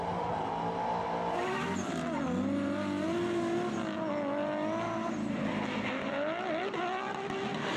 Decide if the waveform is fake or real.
real